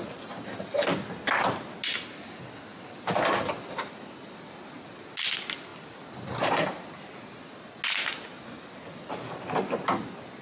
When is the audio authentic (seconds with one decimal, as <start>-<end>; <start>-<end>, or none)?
0.0-2.7; 4.5-10.4

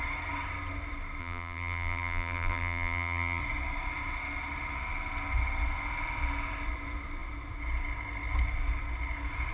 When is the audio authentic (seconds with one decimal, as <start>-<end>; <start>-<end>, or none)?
0.0-1.2; 3.4-9.5